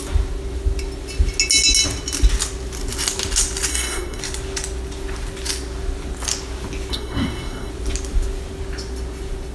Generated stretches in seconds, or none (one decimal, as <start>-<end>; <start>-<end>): 3.7-4.2; 6.9-7.7